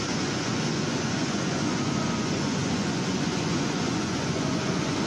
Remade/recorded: remade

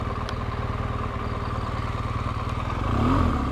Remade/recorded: recorded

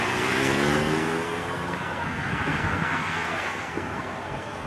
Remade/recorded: remade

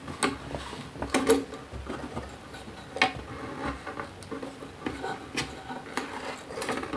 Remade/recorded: recorded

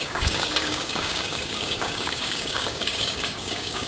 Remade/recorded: remade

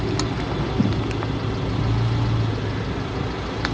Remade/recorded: recorded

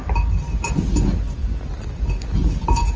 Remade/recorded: recorded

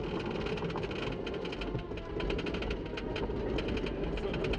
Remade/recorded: recorded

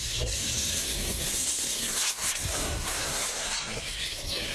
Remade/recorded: remade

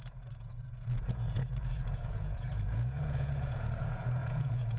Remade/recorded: remade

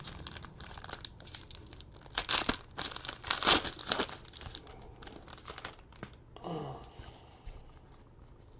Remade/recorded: recorded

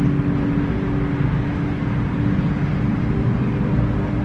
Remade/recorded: recorded